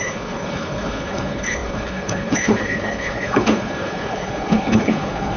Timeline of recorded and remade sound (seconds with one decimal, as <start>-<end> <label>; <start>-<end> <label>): 0.0-5.4 remade